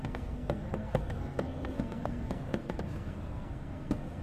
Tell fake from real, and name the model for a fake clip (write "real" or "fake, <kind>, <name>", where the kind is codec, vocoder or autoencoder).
fake, codec, SNAC